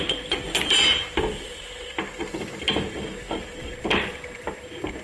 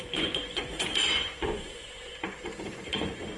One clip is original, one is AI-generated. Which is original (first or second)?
first